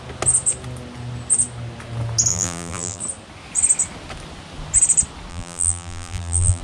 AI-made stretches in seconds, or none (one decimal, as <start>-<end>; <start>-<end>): 2.3-3.0; 5.3-6.6